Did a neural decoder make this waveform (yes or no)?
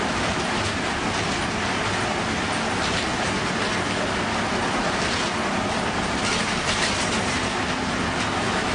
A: no